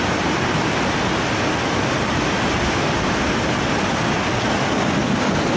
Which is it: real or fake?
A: real